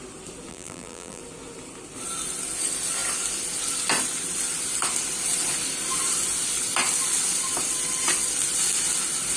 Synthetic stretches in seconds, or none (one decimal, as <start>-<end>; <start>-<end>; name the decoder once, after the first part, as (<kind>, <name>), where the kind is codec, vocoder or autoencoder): 0.5-1.2 (vocoder, BigVGAN v2)